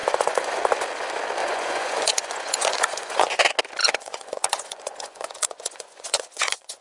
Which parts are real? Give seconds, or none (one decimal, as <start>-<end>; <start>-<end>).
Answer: 0.6-1.4; 3.4-3.8